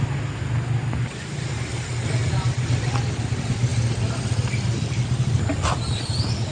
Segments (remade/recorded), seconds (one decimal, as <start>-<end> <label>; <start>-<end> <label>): 0.0-6.5 recorded